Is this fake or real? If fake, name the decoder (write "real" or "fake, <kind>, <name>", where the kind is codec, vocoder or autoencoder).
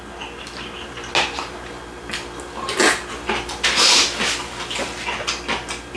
real